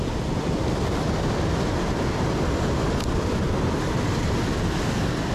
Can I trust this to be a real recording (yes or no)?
yes